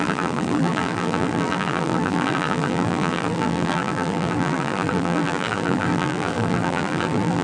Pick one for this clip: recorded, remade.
remade